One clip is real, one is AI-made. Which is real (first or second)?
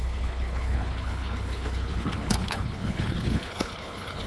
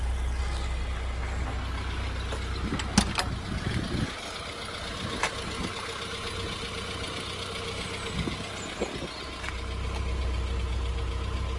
second